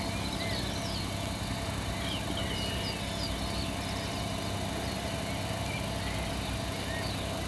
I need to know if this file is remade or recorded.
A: recorded